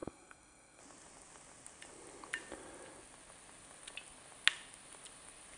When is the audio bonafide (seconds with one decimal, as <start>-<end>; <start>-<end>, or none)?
0.8-5.6